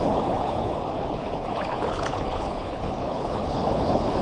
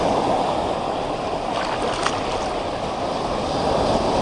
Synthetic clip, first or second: first